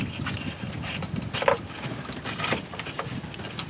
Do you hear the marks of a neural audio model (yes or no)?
no